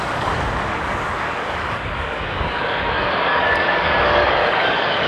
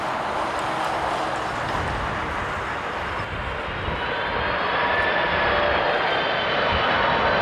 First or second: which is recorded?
second